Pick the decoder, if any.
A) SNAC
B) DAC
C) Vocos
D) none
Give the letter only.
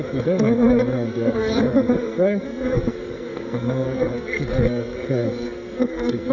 A